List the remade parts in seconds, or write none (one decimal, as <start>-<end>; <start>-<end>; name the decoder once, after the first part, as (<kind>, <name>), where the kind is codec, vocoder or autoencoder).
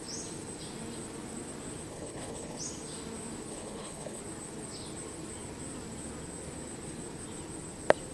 1.9-2.6 (codec, HILCodec); 3.5-4.2